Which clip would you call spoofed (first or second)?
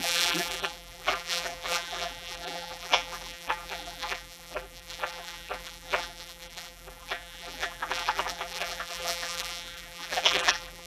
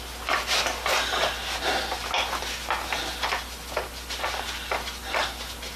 first